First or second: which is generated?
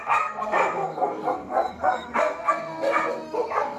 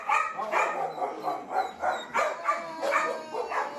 first